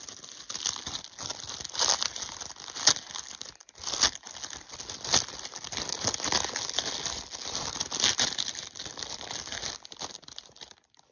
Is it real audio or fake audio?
real